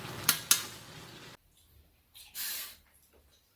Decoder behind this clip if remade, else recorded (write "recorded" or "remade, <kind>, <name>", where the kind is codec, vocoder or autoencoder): recorded